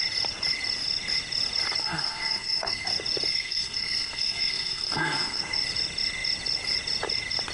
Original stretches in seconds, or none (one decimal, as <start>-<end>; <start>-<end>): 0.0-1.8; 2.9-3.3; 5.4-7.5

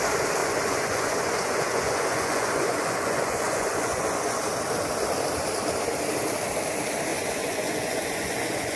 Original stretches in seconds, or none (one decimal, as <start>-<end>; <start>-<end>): 0.0-0.4; 4.4-7.1

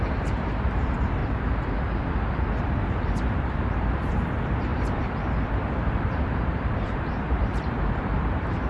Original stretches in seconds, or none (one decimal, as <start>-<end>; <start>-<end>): 1.2-2.6

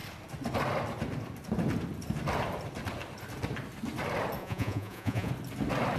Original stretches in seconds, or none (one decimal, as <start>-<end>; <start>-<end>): 0.0-4.4; 5.3-6.0

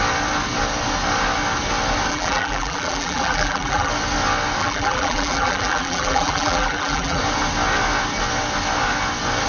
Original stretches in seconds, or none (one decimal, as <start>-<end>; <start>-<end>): 0.0-2.1; 3.9-4.6; 7.2-9.5